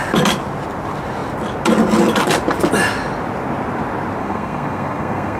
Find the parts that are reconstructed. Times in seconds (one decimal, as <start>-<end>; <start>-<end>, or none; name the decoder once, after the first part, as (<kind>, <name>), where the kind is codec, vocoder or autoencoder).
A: 4.2-5.4 (codec, SNAC)

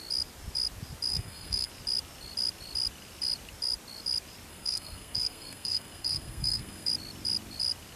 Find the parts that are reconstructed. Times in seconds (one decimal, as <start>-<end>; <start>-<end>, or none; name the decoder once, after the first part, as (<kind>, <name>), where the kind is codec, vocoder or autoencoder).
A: 1.1-1.7 (codec, SNAC); 4.5-6.9

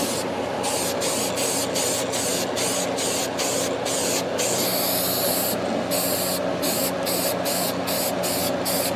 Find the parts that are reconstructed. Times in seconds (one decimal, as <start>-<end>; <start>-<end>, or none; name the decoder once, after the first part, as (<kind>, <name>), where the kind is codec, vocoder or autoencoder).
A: none

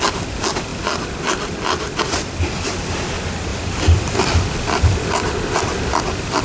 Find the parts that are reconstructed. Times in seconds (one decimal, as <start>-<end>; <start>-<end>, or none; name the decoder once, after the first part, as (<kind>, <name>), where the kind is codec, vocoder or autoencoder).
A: none

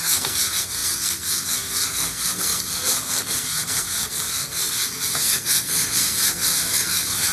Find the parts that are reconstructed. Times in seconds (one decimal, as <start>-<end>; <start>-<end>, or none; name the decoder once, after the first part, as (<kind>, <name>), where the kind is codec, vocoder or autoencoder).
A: 0.0-7.3 (codec, SNAC)

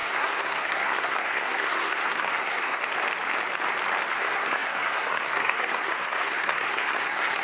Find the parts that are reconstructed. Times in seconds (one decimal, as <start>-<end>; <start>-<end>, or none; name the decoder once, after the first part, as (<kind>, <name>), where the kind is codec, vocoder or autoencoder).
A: 0.0-2.8 (codec, SNAC); 4.1-7.4

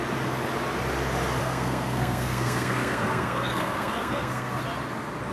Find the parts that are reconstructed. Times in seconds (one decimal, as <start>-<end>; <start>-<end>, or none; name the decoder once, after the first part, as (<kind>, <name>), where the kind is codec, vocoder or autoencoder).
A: 1.4-4.6 (codec, SNAC)

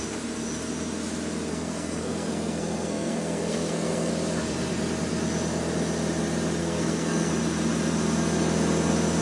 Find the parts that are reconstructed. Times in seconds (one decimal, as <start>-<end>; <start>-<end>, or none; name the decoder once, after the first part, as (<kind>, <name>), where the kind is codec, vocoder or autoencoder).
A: 1.5-4.1 (codec, SNAC); 6.6-7.3